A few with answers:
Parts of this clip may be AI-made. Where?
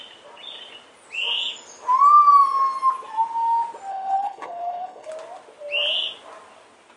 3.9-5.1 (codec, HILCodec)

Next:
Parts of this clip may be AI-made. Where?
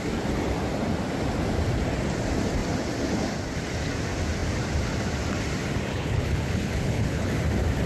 5.9-7.3 (codec, HILCodec)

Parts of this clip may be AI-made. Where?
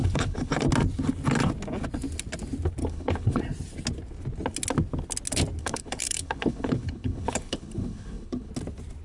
0.0-0.5 (codec, HILCodec); 2.8-3.4; 5.6-8.5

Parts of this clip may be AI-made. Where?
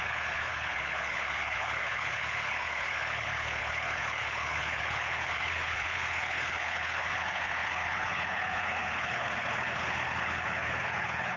0.0-11.4 (codec, HILCodec)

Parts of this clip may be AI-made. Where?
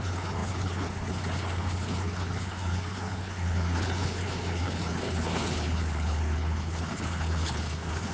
0.0-8.1 (codec, HILCodec)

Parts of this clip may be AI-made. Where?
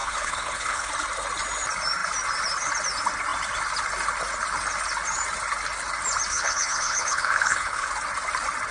0.0-0.9 (codec, HILCodec); 6.3-7.9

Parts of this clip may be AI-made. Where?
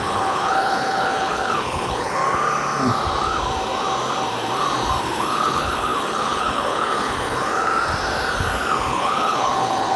0.0-2.2 (codec, HILCodec); 5.0-7.7; 8.9-10.0